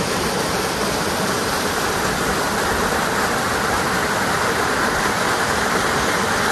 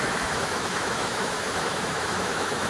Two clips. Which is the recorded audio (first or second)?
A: first